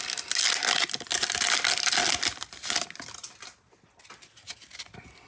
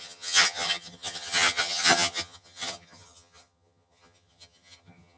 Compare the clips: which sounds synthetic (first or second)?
second